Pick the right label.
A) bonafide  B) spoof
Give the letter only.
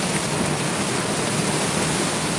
A